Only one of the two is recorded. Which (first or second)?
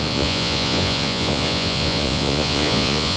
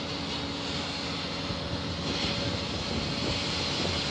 second